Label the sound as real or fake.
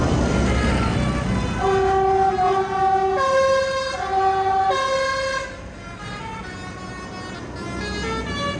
real